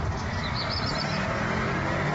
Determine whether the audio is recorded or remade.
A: recorded